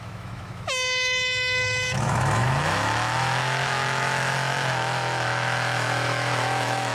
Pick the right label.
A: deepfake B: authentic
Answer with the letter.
A